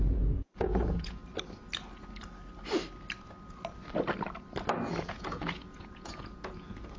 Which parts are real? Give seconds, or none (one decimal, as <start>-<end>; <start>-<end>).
1.2-5.0